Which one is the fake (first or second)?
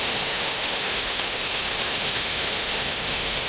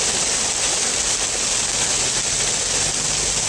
first